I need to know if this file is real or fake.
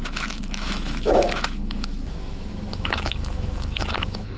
fake